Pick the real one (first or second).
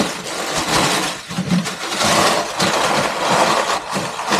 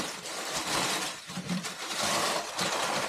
first